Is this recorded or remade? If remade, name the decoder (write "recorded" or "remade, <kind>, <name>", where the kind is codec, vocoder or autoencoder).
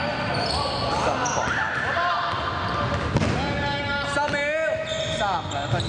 recorded